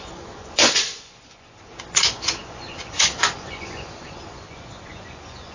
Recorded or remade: remade